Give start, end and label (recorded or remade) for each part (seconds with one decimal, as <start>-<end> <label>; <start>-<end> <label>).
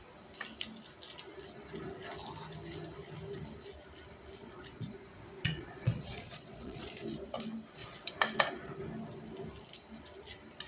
0.0-4.4 recorded; 4.4-7.0 remade; 7.0-10.7 recorded